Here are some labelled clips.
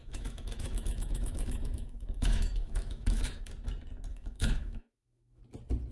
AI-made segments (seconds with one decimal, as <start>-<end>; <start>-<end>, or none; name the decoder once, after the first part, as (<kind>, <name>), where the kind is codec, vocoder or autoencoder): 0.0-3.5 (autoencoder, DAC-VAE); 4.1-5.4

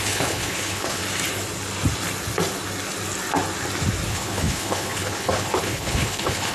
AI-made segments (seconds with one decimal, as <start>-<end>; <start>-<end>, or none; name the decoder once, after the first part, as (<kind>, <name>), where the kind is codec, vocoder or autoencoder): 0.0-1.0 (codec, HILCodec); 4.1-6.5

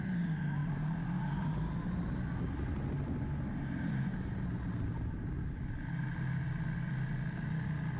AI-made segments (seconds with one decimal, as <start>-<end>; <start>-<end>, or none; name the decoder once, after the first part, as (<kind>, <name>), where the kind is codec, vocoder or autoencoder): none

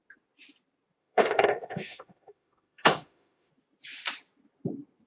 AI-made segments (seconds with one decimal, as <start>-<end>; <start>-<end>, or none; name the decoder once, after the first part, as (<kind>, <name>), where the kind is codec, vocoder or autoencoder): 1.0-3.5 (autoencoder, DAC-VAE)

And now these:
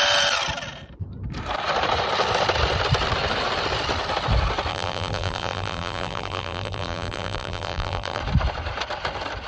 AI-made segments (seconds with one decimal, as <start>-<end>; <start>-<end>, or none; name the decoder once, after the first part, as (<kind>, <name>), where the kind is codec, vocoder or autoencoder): 4.7-8.2 (vocoder, BigVGAN v2)